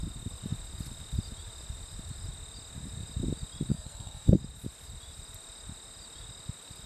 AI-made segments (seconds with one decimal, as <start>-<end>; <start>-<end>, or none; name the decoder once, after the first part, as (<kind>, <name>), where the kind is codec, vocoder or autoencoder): 3.7-4.4 (codec, SNAC)